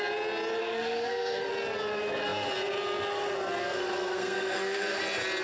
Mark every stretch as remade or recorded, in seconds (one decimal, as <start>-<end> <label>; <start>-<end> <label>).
0.0-0.6 recorded; 0.6-1.5 remade; 1.5-3.6 recorded; 3.6-5.0 remade; 5.0-5.4 recorded